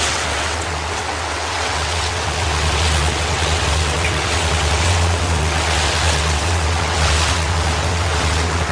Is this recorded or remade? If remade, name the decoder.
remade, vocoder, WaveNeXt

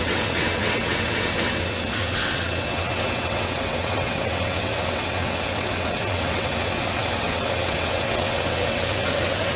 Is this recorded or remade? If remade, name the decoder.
remade, vocoder, WaveNeXt